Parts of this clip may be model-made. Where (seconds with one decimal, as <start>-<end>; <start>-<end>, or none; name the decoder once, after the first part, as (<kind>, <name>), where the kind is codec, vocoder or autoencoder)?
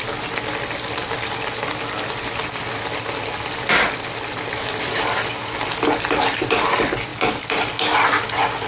none